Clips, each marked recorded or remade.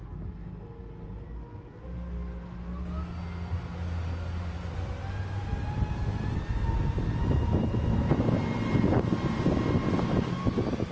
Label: recorded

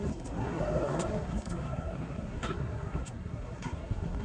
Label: remade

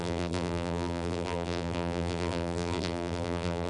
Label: remade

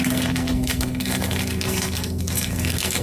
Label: remade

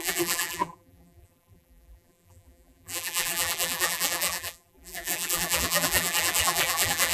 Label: remade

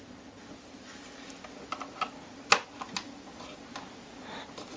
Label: recorded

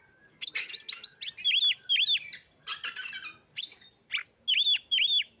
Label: recorded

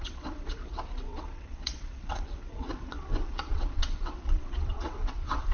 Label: remade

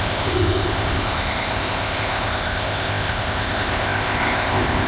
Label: remade